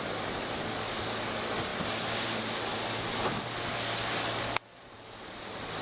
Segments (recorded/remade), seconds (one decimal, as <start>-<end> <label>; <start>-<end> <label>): 0.0-5.8 recorded